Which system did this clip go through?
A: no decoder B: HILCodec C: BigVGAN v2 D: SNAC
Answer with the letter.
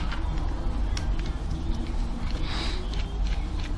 A